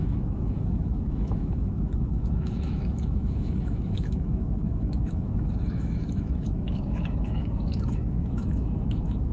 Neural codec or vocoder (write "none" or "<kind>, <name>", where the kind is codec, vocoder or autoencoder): autoencoder, DAC-VAE